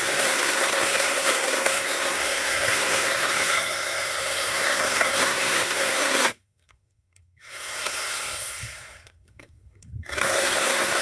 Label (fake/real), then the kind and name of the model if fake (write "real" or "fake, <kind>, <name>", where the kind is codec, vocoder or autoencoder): fake, codec, SNAC